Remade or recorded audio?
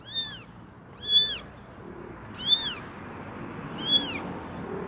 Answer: recorded